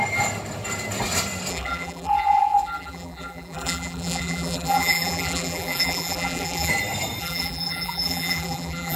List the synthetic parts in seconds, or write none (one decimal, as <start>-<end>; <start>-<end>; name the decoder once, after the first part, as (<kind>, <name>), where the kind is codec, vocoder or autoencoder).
1.5-6.7 (vocoder, BigVGAN v2); 7.2-9.0